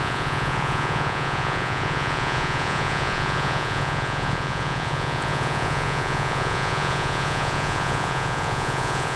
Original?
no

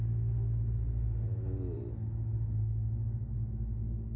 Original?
yes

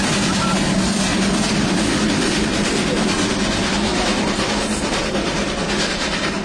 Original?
yes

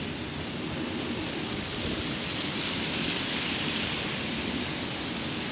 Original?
yes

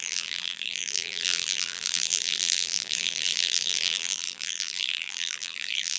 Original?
no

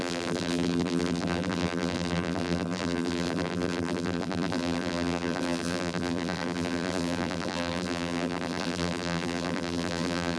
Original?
no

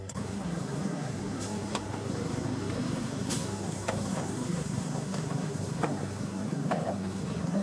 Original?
no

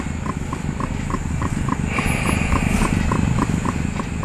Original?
yes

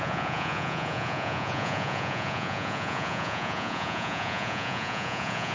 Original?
no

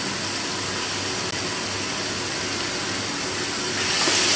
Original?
yes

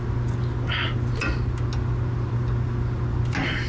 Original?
yes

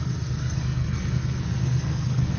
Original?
no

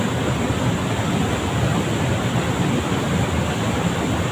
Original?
yes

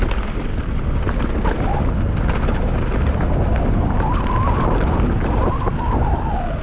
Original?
yes